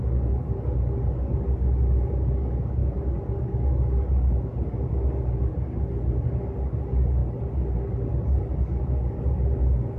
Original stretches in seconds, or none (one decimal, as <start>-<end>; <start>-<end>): 0.0-10.0